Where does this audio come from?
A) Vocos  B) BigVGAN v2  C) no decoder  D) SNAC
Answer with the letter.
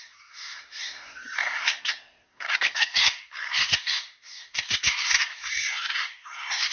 D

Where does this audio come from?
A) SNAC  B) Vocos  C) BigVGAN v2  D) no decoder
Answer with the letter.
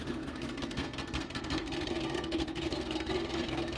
A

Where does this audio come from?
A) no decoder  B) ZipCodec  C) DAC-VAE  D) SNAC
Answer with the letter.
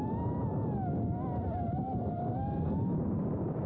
A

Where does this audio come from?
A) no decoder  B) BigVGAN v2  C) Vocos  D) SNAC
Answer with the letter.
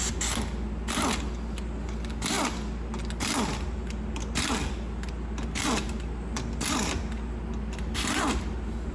A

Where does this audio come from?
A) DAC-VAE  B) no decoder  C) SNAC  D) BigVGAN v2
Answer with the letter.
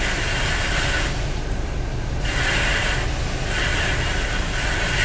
B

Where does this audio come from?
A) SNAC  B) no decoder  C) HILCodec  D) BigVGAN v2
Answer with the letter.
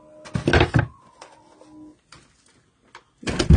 B